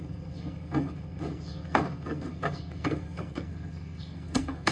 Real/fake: fake